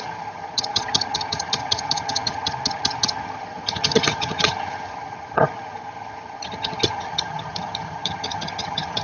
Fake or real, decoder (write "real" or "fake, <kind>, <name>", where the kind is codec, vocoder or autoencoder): fake, vocoder, HiFi-GAN